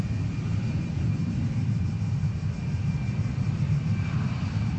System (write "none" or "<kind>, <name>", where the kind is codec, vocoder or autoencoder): none